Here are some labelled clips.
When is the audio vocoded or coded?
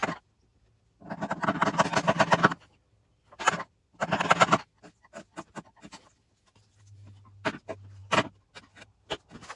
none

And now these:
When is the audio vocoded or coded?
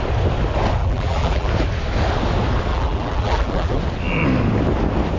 0.8-1.5 (vocoder, BigVGAN v2); 2.7-3.8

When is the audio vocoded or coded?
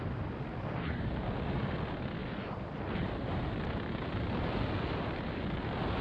none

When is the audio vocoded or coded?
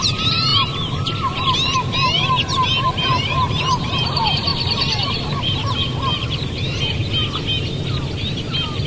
0.0-0.5 (vocoder, BigVGAN v2); 2.9-4.5; 6.0-7.0; 8.5-8.9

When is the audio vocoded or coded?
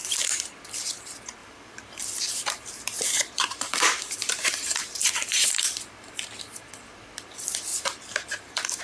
1.4-6.6 (vocoder, BigVGAN v2); 7.7-8.8